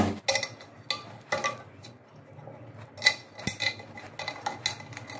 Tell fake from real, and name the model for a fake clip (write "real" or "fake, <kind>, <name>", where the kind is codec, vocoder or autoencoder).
real